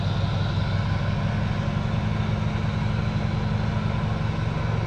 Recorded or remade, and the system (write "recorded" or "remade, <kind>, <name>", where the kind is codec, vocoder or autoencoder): recorded